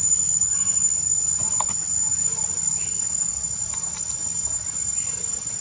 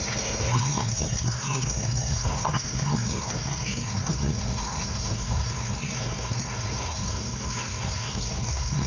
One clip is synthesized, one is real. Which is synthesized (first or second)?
second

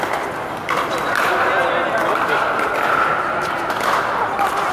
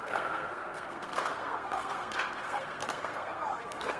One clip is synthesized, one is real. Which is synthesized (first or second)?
second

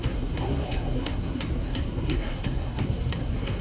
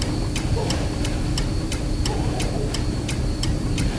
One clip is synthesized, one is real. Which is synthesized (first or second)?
first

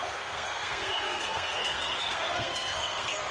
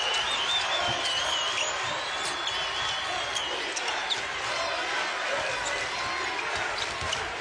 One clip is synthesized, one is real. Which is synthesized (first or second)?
first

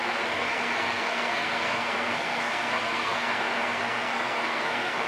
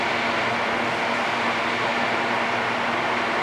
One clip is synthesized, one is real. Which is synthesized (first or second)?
first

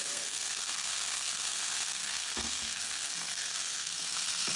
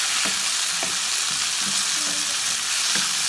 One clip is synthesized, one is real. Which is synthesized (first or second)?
first